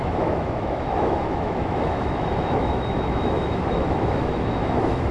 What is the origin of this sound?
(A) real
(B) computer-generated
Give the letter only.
B